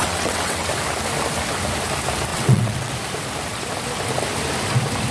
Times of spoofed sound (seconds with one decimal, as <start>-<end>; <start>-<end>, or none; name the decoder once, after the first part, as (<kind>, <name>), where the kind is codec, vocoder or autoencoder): 0.0-0.7 (vocoder, WaveNeXt); 2.3-2.9